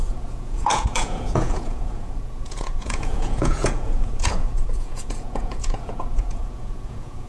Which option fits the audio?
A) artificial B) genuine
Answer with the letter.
A